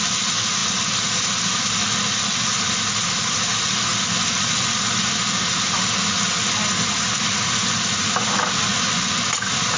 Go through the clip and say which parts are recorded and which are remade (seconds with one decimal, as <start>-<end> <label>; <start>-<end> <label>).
0.0-9.8 recorded